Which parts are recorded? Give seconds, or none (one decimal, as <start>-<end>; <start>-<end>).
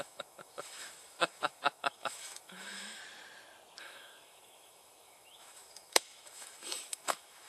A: 3.0-3.8